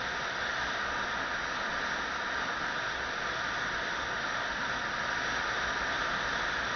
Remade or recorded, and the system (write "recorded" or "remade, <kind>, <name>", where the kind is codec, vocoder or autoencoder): recorded